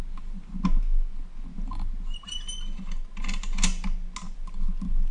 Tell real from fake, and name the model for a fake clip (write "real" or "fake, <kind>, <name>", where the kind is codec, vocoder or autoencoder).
real